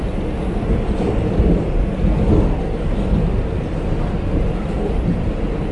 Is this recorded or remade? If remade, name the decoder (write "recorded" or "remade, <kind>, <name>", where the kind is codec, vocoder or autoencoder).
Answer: recorded